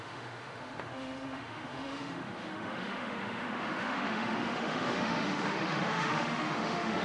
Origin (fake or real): fake